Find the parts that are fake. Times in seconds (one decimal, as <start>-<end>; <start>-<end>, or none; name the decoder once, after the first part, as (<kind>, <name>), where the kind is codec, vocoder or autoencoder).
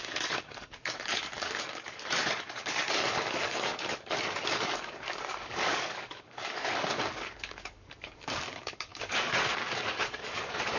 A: 0.0-10.8 (codec, DAC)